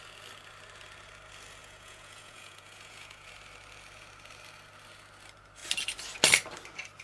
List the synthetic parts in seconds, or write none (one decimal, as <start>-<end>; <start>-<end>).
1.6-3.3